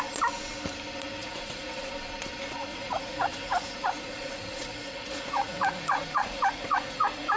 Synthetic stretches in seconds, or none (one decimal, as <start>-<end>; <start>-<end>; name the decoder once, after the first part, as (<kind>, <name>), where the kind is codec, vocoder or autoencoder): 1.2-1.9 (vocoder, Vocos); 2.7-7.4